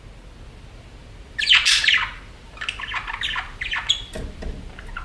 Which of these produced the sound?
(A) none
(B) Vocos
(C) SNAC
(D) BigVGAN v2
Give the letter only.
A